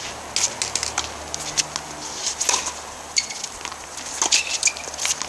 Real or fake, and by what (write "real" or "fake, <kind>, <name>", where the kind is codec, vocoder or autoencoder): real